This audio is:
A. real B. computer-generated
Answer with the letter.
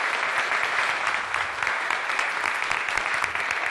A